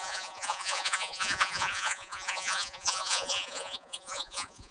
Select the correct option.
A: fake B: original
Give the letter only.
A